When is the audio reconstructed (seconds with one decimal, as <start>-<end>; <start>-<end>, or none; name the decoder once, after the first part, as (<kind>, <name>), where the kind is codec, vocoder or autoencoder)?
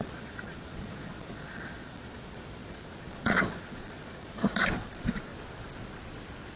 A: 0.0-5.3 (vocoder, Vocos)